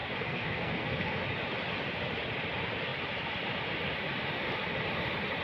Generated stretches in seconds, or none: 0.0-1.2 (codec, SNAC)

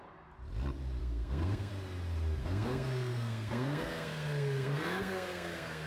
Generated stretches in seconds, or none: 1.0-1.7 (codec, SNAC); 2.4-5.9